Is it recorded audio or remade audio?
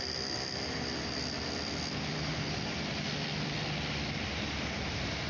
recorded